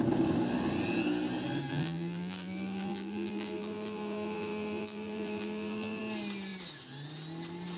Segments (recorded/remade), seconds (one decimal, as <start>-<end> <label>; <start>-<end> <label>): 0.0-1.7 recorded; 1.7-6.0 remade; 6.0-7.8 recorded